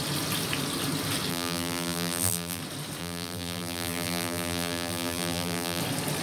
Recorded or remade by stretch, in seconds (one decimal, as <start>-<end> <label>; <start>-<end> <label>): 0.0-1.3 recorded; 1.3-2.6 remade; 2.6-3.0 recorded; 3.0-5.8 remade; 5.8-6.2 recorded